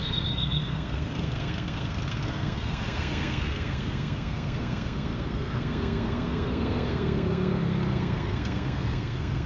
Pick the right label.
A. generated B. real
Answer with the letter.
A